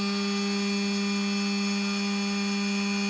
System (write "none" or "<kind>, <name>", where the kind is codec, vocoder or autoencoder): none